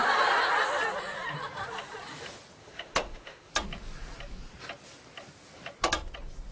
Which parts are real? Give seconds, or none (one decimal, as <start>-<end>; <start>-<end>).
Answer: 0.0-2.6; 3.5-6.5